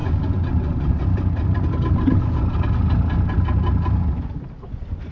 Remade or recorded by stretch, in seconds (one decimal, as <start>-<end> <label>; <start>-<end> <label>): 0.0-1.0 remade; 1.0-5.1 recorded